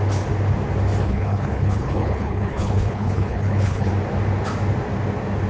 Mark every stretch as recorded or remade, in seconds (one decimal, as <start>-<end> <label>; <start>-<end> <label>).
0.0-1.0 recorded; 1.0-3.9 remade; 3.9-5.5 recorded